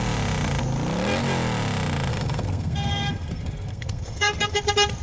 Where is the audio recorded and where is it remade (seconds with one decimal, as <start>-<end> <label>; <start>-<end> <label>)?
0.0-2.1 recorded; 2.1-4.6 remade; 4.6-5.0 recorded